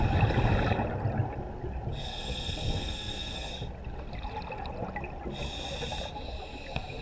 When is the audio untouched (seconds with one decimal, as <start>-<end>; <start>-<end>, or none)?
0.0-2.1; 3.5-7.0